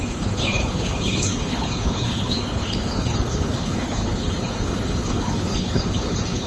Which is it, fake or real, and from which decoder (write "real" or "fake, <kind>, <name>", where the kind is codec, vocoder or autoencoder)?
fake, codec, HILCodec